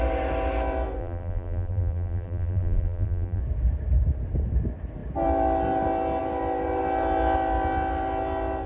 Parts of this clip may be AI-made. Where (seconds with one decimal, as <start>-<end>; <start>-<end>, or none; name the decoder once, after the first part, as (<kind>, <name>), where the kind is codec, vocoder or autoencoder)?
1.0-3.4 (vocoder, BigVGAN v2)